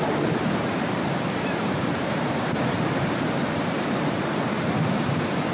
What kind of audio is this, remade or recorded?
remade